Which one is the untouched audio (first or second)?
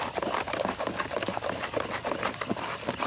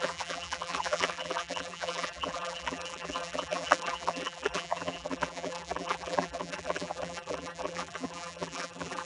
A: first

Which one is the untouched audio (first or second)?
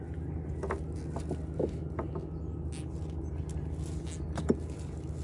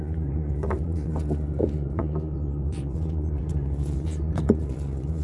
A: first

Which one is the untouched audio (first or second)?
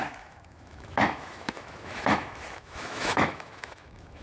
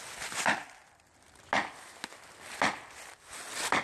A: second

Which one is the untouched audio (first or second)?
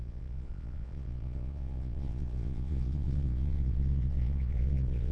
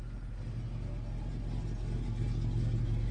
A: second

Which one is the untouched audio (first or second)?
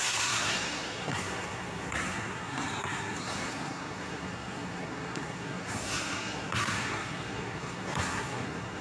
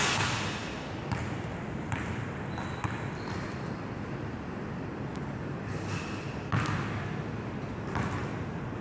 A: second